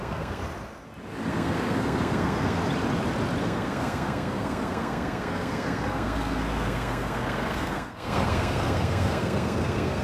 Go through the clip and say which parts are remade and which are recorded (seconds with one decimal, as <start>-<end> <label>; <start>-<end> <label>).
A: 0.0-0.4 remade; 0.4-1.3 recorded; 1.3-2.6 remade; 2.6-3.4 recorded; 3.4-10.0 remade